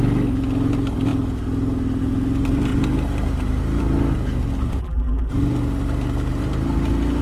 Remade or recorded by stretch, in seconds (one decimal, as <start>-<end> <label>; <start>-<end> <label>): 0.0-4.8 recorded; 4.8-5.3 remade; 5.3-7.2 recorded